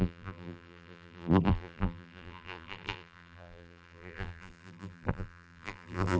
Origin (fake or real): fake